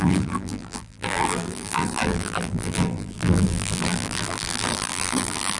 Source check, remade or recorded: remade